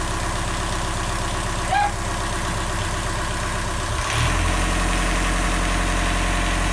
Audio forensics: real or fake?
real